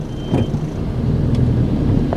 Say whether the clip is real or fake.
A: real